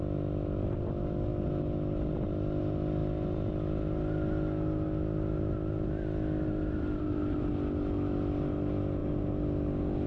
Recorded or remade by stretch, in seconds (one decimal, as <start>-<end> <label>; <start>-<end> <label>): 0.0-10.1 recorded